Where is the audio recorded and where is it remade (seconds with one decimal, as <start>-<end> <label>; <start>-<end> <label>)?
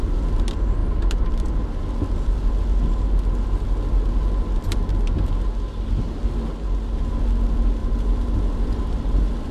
0.0-0.8 recorded; 0.8-1.5 remade; 1.5-7.8 recorded; 7.8-9.5 remade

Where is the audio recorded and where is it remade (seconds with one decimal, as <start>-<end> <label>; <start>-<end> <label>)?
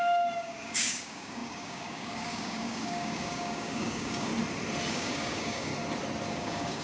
0.0-4.3 remade; 4.3-4.9 recorded; 4.9-5.7 remade; 5.7-6.3 recorded; 6.3-6.8 remade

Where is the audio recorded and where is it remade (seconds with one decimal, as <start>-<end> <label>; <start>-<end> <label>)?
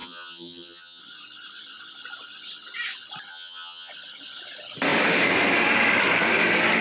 0.0-1.0 remade; 1.0-3.3 recorded; 3.3-3.9 remade; 3.9-6.8 recorded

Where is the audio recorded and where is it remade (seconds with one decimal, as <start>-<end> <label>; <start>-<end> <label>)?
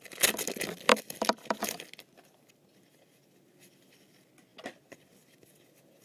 0.0-0.9 recorded; 0.9-1.6 remade; 1.6-6.0 recorded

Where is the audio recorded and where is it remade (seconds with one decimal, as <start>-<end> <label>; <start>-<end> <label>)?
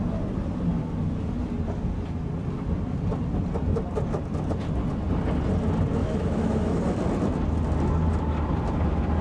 0.0-6.0 recorded; 6.0-6.8 remade; 6.8-9.2 recorded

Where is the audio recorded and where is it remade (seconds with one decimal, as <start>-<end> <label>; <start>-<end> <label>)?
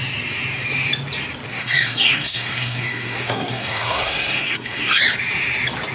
0.0-1.5 recorded; 1.5-5.0 remade; 5.0-5.9 recorded